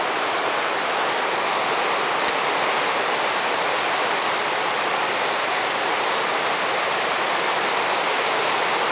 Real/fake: real